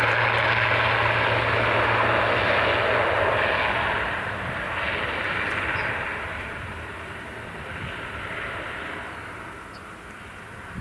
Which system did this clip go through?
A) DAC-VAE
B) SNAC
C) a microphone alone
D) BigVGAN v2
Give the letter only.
C